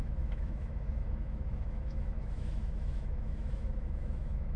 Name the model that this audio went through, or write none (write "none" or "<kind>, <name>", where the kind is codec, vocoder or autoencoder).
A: autoencoder, DAC-VAE